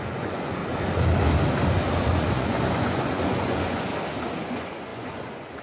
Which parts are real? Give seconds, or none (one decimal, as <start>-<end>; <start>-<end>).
0.6-2.1; 3.9-4.4